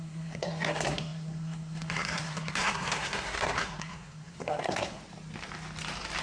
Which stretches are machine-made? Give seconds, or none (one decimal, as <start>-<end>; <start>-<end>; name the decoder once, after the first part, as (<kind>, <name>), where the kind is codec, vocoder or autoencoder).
0.0-5.0 (codec, SNAC)